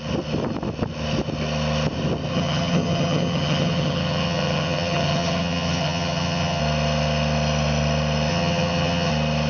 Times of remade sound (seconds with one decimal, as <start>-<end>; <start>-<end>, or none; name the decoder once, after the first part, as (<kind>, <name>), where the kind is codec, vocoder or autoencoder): 2.3-6.6 (vocoder, HiFi-GAN); 8.3-9.1

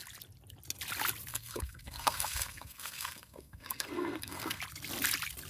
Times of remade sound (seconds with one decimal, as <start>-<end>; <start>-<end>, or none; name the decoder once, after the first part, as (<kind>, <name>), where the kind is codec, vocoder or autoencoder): 1.3-4.6 (codec, SNAC)